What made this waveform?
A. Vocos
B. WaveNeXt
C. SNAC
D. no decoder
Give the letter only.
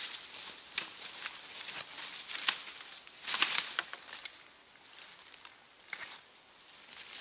D